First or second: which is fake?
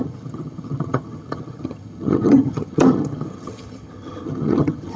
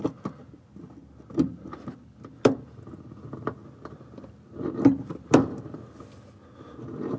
first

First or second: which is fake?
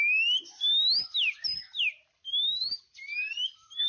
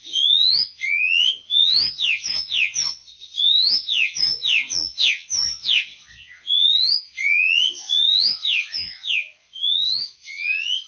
second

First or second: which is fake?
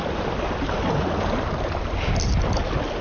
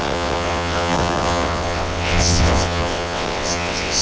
second